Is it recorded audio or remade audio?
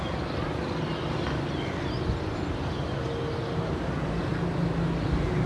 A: recorded